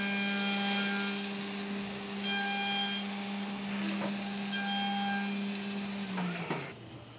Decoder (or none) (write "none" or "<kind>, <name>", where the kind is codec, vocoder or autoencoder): none